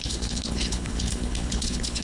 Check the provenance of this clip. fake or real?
fake